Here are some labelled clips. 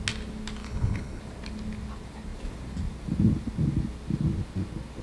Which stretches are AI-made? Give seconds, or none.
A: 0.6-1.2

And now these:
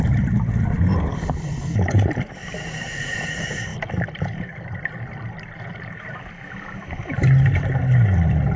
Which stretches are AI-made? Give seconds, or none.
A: none

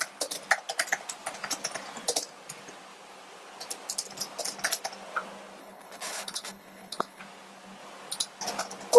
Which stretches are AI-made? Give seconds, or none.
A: 5.6-7.2

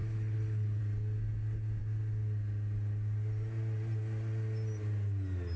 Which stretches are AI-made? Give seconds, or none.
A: 0.0-0.8

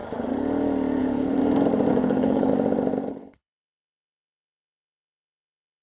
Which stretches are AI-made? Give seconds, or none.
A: 1.0-1.4; 1.9-2.5; 3.1-5.8

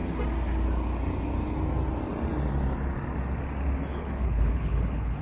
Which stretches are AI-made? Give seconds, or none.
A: 3.9-5.2

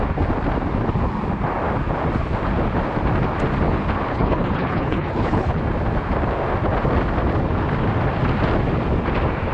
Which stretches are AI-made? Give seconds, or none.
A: 4.1-5.6

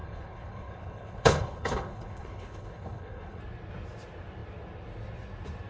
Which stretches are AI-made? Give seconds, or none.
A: 0.0-3.4